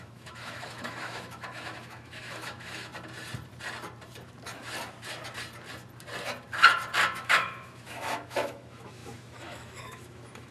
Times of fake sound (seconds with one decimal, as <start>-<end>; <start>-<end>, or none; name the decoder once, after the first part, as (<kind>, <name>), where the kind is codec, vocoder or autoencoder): 0.0-2.9 (autoencoder, DAC-VAE); 7.2-10.5